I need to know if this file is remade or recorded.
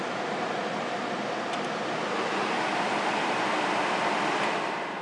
recorded